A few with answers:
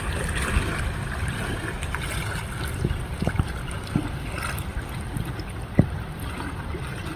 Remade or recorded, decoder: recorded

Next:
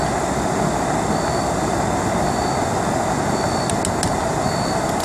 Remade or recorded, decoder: recorded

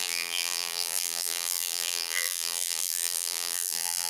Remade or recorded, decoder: remade, vocoder, BigVGAN v2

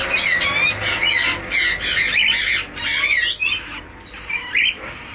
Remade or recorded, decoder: recorded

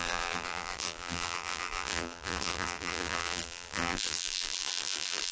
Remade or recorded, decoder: remade, vocoder, BigVGAN v2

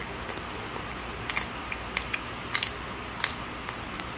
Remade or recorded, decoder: recorded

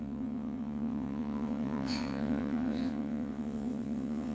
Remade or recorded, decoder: remade, vocoder, WaveNeXt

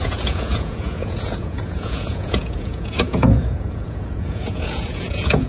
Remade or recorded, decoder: remade, vocoder, Vocos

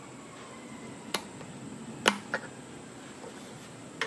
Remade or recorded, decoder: recorded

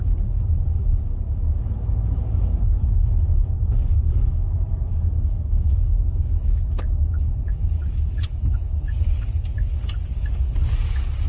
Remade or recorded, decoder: remade, codec, DAC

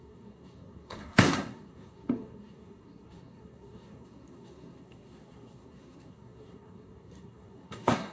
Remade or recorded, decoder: remade, codec, SNAC